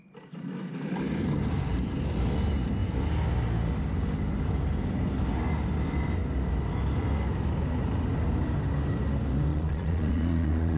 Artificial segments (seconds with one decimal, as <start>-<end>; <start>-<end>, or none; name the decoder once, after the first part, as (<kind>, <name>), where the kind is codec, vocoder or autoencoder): 9.5-10.8 (vocoder, Vocos)